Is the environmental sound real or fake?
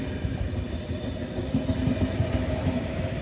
real